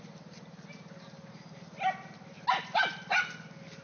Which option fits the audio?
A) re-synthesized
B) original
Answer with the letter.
B